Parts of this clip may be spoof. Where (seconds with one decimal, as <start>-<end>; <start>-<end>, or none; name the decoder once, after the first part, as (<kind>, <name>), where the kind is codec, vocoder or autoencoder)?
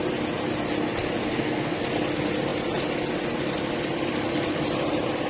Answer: 1.2-1.8 (codec, SNAC)